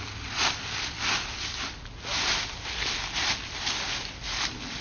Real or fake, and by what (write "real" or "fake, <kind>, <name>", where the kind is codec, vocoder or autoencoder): real